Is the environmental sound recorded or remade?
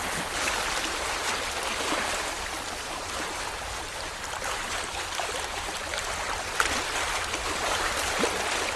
recorded